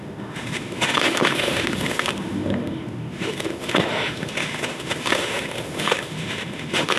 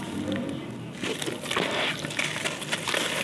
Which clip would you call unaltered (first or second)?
second